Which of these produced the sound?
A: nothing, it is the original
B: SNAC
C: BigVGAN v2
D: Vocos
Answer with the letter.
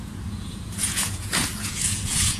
D